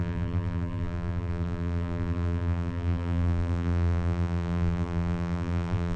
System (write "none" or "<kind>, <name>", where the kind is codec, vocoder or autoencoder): vocoder, BigVGAN v2